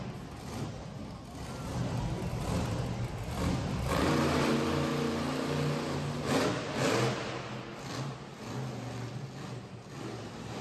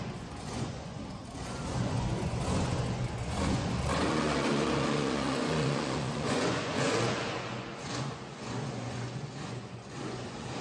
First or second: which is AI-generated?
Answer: second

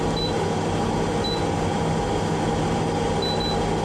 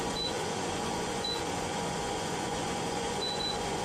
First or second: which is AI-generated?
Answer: second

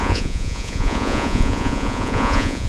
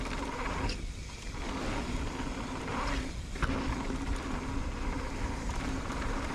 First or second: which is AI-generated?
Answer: first